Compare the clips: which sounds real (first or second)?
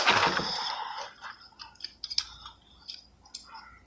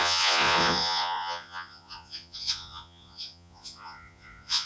first